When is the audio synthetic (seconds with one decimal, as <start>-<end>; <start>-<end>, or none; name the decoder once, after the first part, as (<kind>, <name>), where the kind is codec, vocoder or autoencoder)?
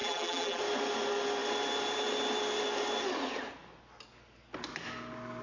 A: 0.0-0.6 (vocoder, BigVGAN v2)